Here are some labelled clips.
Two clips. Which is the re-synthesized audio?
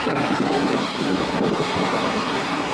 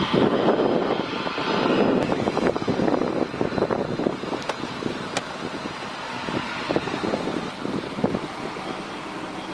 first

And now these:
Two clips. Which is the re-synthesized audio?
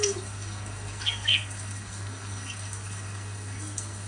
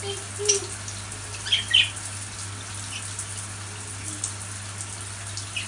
first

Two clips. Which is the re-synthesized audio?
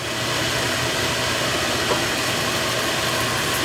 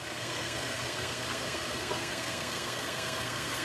second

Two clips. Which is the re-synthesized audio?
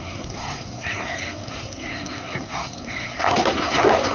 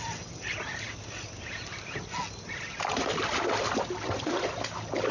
first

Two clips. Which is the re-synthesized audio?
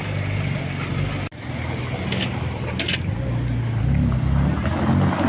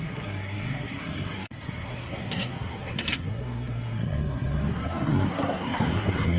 second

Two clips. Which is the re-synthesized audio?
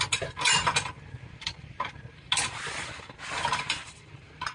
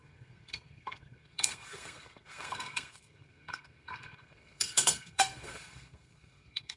second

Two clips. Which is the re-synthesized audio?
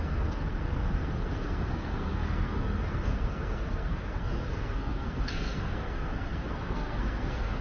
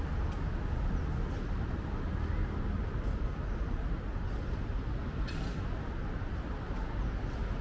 first